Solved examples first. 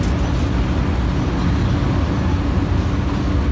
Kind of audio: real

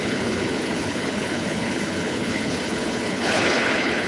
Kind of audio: fake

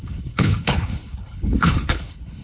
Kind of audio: fake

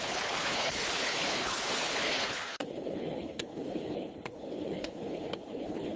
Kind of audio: fake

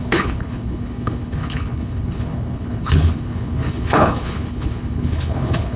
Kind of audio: fake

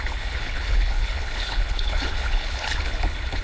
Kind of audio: fake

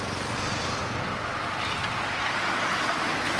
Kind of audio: real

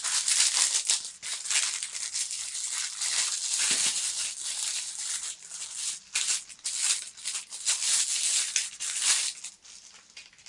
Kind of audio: real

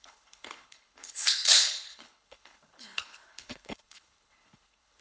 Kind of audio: fake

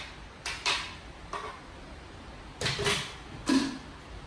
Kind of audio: real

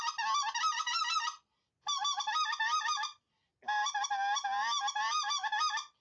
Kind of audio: real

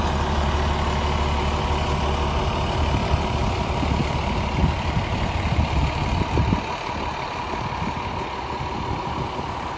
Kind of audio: real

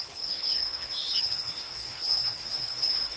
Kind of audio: fake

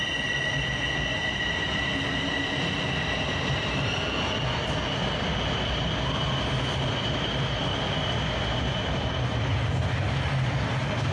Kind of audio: real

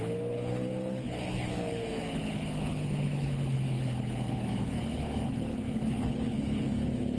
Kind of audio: fake